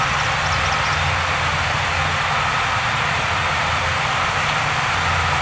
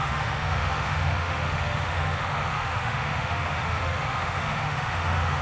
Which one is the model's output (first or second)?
second